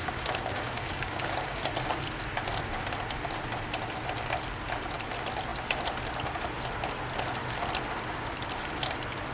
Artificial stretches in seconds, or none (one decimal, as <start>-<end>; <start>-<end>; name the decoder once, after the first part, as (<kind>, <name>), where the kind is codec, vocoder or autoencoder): 0.0-1.6 (codec, DAC)

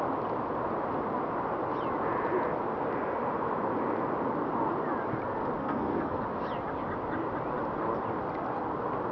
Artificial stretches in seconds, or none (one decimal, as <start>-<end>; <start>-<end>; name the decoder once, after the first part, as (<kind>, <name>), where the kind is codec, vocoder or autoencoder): 5.6-6.2 (codec, SNAC)